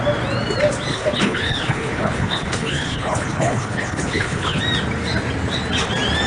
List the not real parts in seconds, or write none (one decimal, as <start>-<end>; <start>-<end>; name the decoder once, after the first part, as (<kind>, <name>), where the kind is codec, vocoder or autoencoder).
0.9-4.6 (codec, HILCodec)